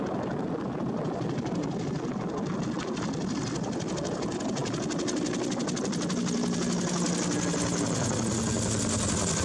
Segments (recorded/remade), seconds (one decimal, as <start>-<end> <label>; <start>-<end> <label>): 0.0-9.4 recorded